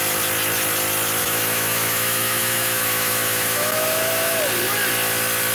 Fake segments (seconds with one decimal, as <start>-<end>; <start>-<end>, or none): 1.2-4.4